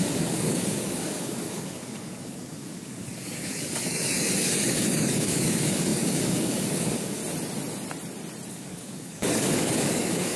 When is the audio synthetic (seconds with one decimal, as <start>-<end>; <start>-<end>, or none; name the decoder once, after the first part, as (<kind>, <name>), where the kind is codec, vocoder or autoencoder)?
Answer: 0.0-7.2 (codec, DAC); 8.5-10.4